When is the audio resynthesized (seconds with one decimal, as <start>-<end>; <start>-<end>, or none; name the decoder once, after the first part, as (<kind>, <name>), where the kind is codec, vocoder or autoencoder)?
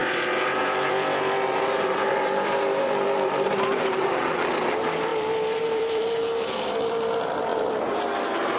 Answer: 0.9-8.6 (vocoder, BigVGAN v2)